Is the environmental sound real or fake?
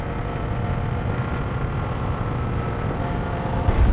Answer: real